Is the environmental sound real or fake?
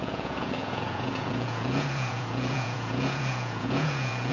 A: fake